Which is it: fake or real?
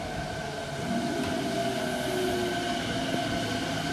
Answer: real